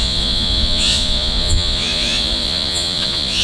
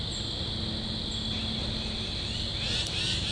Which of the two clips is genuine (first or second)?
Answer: second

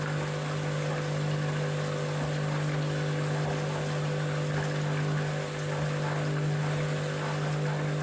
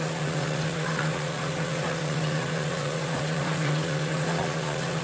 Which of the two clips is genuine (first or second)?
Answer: first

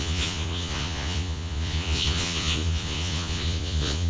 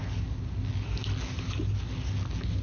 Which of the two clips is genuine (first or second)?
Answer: second